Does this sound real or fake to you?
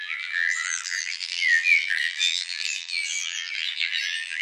fake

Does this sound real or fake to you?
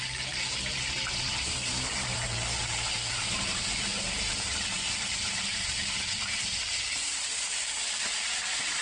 fake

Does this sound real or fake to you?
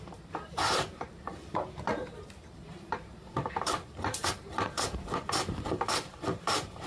fake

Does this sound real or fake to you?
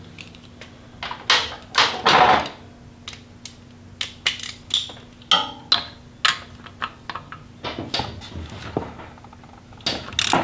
real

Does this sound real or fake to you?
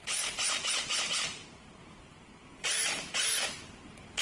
fake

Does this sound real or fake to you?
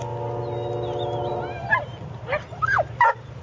real